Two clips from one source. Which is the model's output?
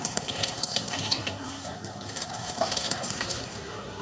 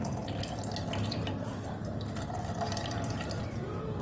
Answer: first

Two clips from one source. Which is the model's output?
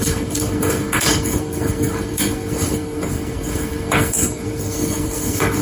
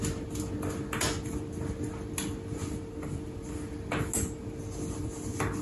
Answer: first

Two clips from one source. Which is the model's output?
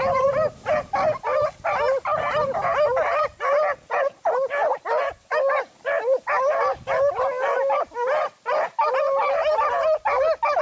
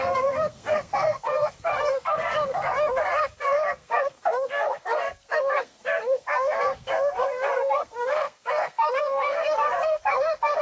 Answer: second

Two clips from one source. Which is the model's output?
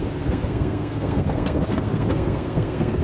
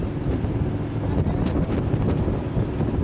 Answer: first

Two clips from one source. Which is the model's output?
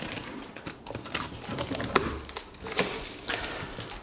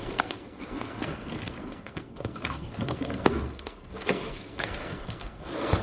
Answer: second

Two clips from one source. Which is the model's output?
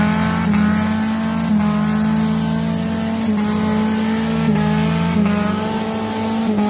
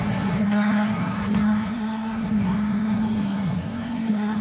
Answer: second